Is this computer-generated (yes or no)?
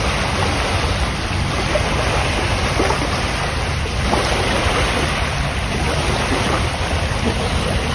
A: no